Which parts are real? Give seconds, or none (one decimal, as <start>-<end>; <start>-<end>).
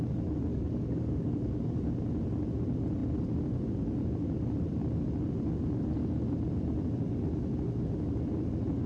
0.0-0.5; 1.8-8.9